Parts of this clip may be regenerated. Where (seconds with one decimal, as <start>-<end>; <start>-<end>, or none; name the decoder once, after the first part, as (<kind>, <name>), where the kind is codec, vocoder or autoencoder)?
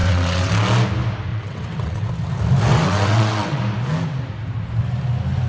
0.0-0.5 (vocoder, WaveNeXt); 1.3-2.1; 2.7-3.6